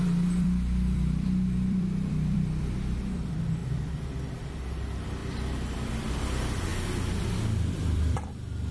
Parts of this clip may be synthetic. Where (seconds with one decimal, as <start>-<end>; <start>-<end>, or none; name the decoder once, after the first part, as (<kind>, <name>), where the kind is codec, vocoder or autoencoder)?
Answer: 0.0-3.6 (vocoder, BigVGAN v2); 4.3-6.7; 7.7-8.7